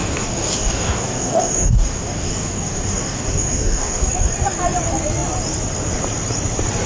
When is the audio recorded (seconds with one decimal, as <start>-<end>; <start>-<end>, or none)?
4.1-6.9